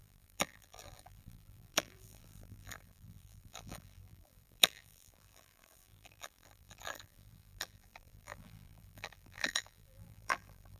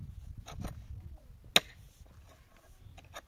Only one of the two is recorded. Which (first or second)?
second